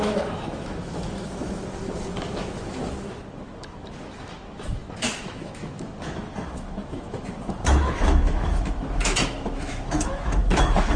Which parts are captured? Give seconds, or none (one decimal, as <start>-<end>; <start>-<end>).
none